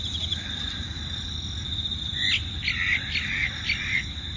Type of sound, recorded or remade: recorded